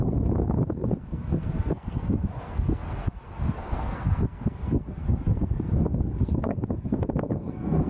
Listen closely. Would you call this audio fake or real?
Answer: fake